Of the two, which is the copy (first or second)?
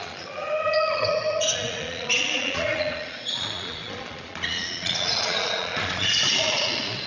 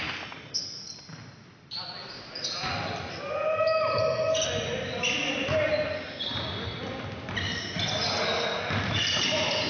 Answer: first